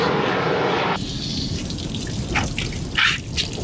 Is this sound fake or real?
real